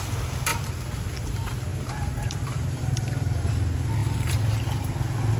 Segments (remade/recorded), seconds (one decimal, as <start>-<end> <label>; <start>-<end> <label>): 0.0-1.7 recorded; 1.7-3.5 remade; 3.5-4.0 recorded; 4.0-4.9 remade; 4.9-5.4 recorded